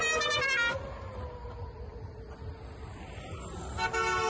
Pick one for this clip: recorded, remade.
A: recorded